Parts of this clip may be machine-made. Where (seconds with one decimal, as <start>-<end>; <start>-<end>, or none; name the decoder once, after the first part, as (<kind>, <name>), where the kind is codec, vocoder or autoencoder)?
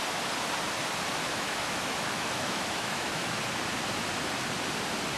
1.2-3.4 (autoencoder, DAC-VAE)